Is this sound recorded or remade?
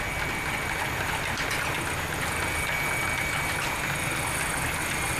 recorded